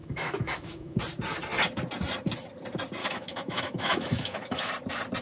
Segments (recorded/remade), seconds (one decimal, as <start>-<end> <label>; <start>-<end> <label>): 0.0-1.0 remade; 1.0-3.0 recorded; 3.0-4.7 remade; 4.7-5.2 recorded